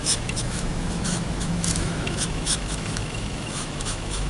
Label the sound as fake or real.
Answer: fake